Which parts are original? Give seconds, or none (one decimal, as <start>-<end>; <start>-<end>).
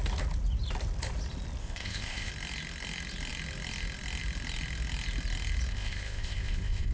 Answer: 0.0-1.6; 2.3-5.7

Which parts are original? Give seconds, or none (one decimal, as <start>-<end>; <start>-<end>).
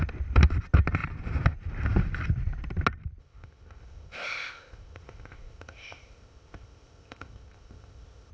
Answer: 0.0-3.2